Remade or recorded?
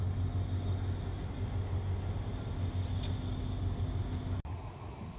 recorded